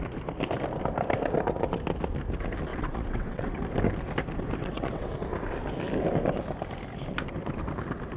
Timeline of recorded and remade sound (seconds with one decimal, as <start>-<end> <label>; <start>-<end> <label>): 0.0-2.7 recorded; 2.7-3.6 remade; 3.6-4.6 recorded; 4.6-5.1 remade; 5.1-8.2 recorded